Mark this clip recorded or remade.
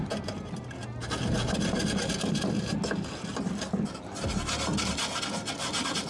recorded